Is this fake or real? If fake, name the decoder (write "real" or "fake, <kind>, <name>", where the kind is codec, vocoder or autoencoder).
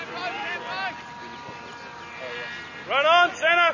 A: real